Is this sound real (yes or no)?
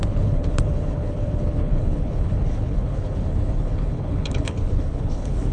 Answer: no